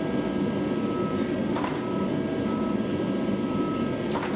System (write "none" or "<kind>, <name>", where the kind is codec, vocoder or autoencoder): none